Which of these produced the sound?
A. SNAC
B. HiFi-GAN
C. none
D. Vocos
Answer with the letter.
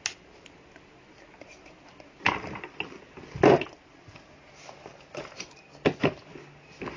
C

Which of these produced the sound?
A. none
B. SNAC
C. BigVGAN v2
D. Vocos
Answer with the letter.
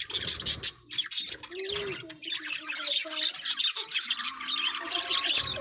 A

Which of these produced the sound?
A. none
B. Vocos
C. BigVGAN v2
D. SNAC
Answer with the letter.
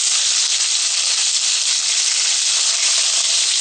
A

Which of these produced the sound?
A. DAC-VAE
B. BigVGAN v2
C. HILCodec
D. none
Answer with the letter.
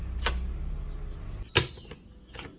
D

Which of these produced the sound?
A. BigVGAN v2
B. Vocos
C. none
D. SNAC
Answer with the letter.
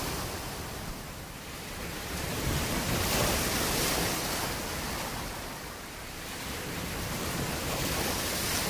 C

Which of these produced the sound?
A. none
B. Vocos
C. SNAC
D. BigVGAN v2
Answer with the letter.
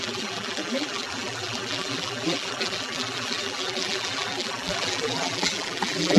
D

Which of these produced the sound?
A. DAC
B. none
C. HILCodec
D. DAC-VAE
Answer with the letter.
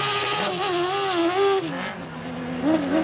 B